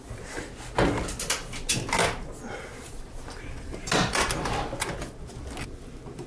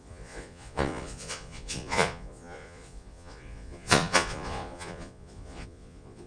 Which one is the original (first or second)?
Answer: first